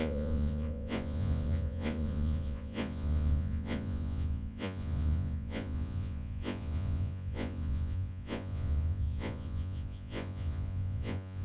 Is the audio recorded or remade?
remade